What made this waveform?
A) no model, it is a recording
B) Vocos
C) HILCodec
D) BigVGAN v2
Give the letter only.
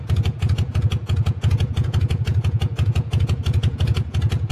B